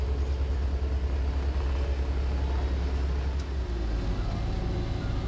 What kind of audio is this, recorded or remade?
recorded